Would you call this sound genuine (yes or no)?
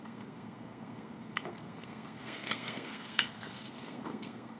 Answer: no